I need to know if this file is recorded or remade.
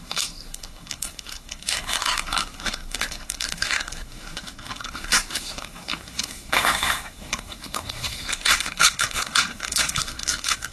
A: remade